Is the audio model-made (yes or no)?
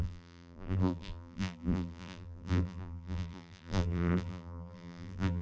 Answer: yes